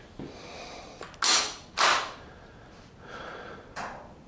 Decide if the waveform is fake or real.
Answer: real